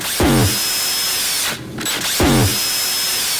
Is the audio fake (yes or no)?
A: no